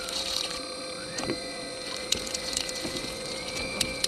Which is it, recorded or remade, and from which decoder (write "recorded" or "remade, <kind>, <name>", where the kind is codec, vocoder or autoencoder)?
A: remade, vocoder, Vocos